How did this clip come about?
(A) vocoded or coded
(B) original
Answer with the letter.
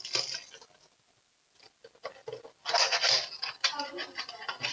B